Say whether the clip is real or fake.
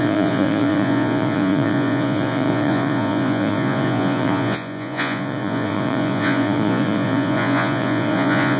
fake